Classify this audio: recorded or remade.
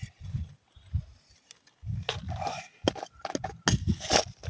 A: recorded